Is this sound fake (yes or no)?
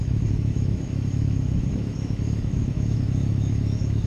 yes